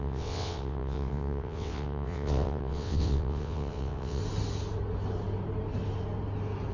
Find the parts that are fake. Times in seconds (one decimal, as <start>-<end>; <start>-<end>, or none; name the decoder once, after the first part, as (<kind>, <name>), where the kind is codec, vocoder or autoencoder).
0.0-4.2 (vocoder, WaveNeXt)